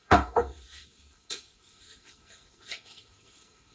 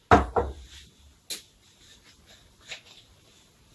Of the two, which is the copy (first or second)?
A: first